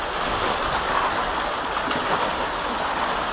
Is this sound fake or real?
real